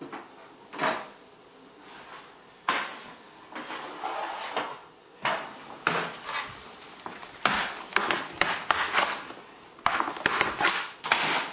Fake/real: real